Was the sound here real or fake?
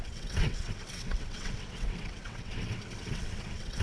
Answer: fake